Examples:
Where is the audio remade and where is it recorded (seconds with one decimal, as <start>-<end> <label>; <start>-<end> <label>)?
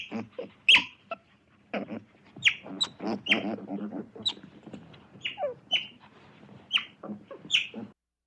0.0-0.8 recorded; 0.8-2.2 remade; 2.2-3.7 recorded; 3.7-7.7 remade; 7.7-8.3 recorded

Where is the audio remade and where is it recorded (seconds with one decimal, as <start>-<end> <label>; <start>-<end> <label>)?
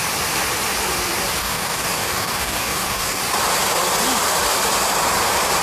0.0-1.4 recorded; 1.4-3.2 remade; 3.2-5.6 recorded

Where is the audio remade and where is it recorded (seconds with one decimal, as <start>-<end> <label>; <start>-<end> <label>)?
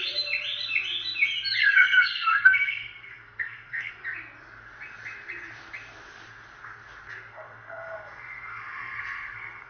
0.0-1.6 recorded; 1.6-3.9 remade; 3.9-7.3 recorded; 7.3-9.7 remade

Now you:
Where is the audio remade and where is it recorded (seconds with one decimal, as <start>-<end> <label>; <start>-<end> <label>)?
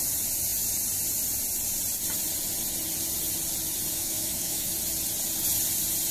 0.0-3.9 recorded; 3.9-4.7 remade; 4.7-6.1 recorded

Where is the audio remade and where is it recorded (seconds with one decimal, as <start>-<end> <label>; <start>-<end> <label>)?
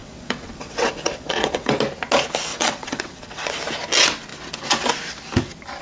0.0-1.8 remade; 1.8-2.5 recorded; 2.5-3.5 remade; 3.5-5.8 recorded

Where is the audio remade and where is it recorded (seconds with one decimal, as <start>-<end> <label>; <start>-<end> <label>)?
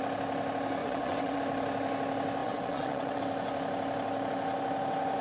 0.0-0.8 recorded; 0.8-1.4 remade; 1.4-2.4 recorded; 2.4-3.2 remade; 3.2-5.2 recorded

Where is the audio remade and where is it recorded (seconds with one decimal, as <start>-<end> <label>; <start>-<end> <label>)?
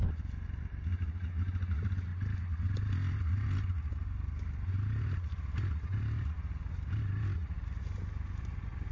0.0-8.9 recorded